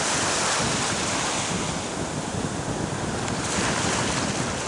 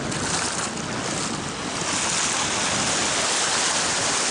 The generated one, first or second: first